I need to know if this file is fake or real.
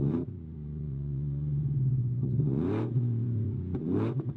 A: fake